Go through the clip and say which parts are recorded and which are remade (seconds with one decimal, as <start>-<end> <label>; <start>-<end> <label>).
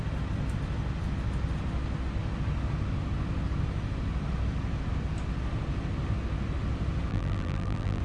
0.0-7.1 recorded; 7.1-8.0 remade